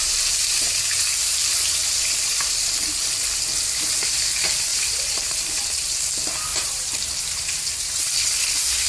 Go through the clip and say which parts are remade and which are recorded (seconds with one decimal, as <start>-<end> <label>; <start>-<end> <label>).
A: 0.0-2.5 remade; 2.5-4.7 recorded; 4.7-6.1 remade; 6.1-6.5 recorded; 6.5-8.0 remade; 8.0-8.9 recorded